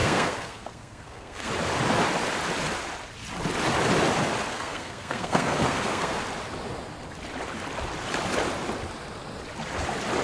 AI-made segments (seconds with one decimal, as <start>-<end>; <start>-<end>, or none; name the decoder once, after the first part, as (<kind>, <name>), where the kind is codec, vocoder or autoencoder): 0.0-1.5 (codec, SNAC); 4.5-6.2